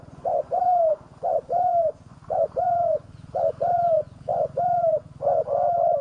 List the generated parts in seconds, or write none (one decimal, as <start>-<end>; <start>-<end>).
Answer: 0.0-6.0